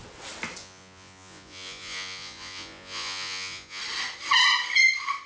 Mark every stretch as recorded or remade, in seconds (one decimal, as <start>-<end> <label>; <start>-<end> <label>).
0.0-0.6 recorded; 0.6-3.8 remade; 3.8-5.3 recorded